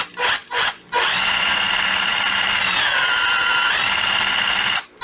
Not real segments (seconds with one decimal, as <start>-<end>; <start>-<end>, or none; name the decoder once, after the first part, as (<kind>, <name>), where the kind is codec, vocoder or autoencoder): 0.4-1.7 (vocoder, Vocos)